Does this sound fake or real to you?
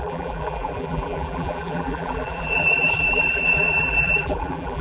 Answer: fake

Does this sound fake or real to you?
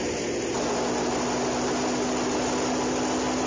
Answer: real